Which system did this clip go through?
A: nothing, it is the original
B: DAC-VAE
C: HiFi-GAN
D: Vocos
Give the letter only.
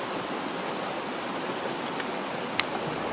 A